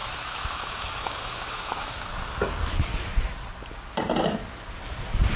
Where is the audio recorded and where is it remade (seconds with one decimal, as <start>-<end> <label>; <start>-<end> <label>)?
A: 0.0-2.1 remade; 2.1-5.4 recorded